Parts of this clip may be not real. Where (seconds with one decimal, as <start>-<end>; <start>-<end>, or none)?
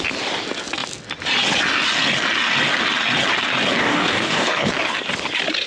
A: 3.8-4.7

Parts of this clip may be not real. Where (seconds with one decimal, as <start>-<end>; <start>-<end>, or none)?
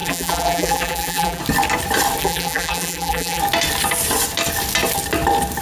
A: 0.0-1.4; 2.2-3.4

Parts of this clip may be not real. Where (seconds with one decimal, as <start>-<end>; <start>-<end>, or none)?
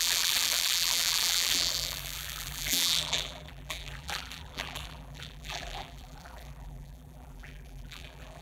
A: 0.0-8.4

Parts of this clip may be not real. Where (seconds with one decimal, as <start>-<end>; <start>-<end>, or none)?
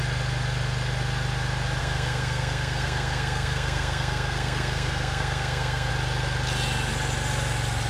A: 1.8-5.9